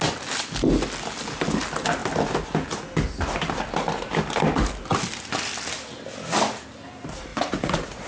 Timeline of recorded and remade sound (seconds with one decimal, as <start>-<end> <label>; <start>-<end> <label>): 0.0-7.3 recorded; 7.3-8.1 remade